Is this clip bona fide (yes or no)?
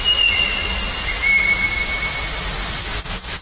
yes